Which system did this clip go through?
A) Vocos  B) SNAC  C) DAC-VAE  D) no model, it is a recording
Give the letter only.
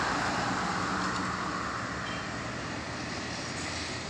D